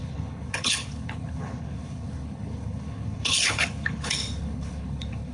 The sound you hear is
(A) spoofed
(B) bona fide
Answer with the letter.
A